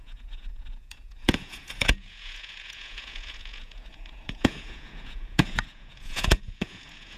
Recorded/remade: remade